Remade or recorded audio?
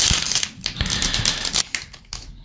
recorded